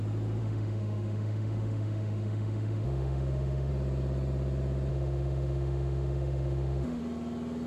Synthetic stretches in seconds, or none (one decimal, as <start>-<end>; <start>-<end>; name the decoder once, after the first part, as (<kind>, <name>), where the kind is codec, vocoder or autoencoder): 0.4-3.7 (autoencoder, DAC-VAE); 4.9-7.0